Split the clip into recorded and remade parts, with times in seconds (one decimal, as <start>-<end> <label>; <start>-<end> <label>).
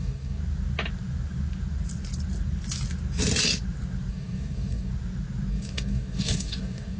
0.0-0.4 remade; 0.4-4.1 recorded; 4.1-4.9 remade; 4.9-5.5 recorded; 5.5-7.0 remade